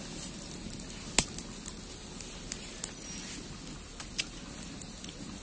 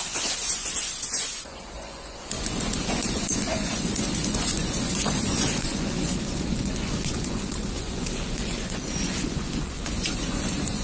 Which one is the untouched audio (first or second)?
first